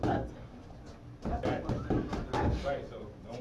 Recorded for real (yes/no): yes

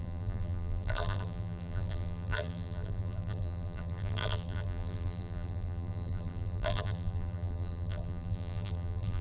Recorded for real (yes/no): no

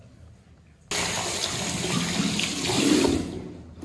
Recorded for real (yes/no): yes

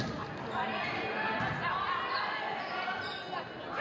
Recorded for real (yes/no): yes